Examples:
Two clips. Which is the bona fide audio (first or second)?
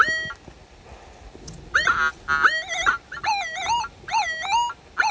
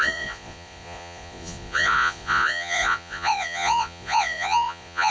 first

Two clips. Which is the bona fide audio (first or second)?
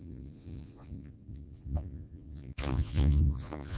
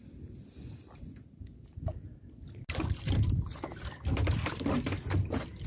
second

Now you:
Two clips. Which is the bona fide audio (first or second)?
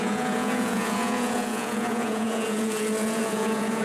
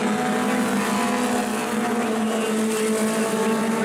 second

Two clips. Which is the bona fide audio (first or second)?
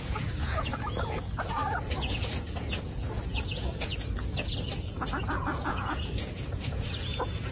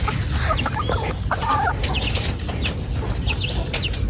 second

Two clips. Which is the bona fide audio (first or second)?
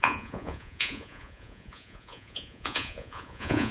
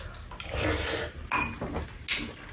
second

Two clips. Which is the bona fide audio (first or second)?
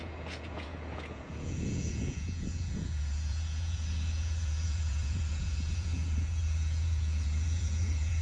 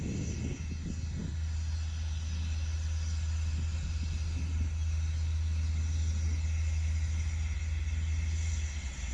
second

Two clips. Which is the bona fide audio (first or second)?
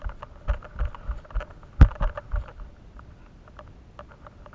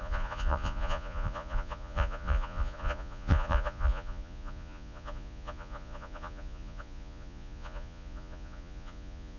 first